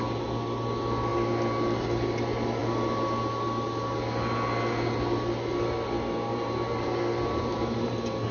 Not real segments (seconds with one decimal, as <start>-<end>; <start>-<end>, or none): none